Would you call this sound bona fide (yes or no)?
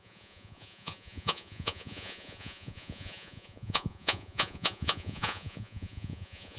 no